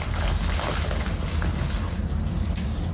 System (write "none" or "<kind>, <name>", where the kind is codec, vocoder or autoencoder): none